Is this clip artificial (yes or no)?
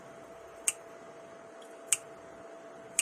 no